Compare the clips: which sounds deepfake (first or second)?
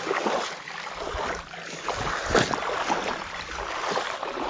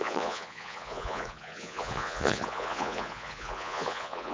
second